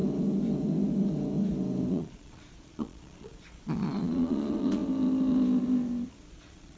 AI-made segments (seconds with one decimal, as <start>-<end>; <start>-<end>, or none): 1.9-4.8; 6.1-6.8